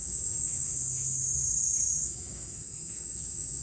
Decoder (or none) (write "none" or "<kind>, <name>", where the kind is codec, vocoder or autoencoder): autoencoder, DAC-VAE